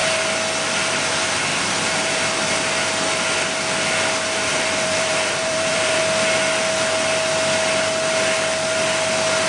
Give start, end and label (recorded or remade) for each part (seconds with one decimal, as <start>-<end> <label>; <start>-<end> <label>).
0.0-1.5 recorded; 1.5-2.5 remade; 2.5-4.5 recorded; 4.5-6.0 remade; 6.0-9.5 recorded